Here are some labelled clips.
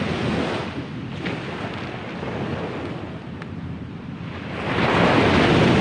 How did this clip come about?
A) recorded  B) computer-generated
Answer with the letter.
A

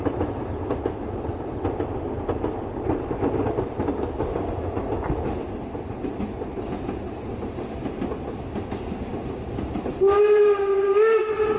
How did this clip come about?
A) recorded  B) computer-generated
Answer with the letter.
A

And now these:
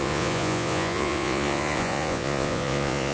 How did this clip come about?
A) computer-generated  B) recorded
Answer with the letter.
A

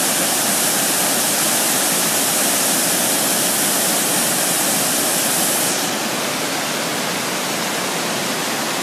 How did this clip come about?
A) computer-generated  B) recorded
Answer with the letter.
B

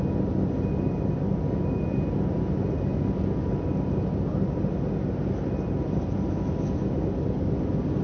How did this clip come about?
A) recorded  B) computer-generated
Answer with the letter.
A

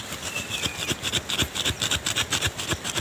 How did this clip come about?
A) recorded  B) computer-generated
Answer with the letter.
A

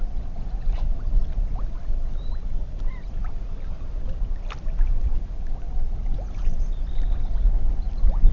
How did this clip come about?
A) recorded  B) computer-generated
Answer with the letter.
A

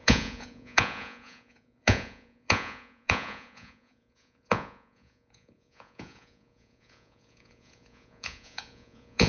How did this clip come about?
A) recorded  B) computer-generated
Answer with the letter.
B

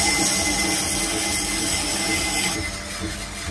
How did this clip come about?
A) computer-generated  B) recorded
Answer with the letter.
B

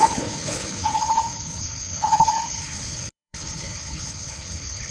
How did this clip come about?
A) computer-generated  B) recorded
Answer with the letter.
A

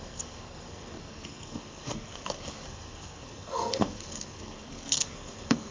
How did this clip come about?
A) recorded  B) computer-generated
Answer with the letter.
B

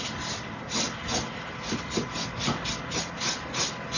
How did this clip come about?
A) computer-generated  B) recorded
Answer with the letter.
B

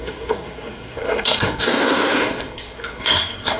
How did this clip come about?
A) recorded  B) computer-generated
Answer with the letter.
B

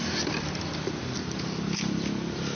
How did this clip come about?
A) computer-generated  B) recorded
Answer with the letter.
B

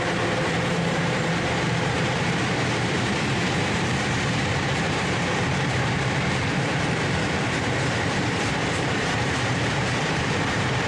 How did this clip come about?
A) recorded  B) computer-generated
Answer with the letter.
B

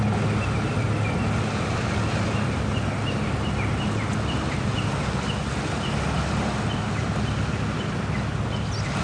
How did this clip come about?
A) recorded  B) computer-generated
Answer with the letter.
A